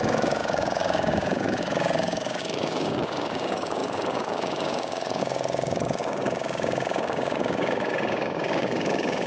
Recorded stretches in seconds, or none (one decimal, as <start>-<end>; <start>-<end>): none